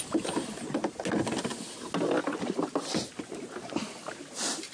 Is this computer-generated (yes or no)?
no